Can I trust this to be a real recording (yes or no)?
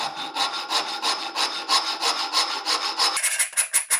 yes